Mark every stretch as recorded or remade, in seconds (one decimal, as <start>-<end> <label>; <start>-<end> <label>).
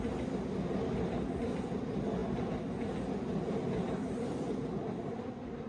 0.0-5.7 recorded